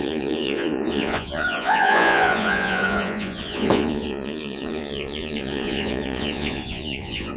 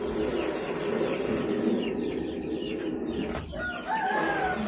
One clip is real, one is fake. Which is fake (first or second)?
first